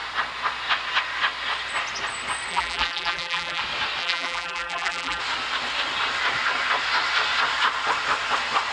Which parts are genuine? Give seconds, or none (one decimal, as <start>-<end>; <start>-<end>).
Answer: 0.0-2.5; 3.6-4.0; 5.2-8.7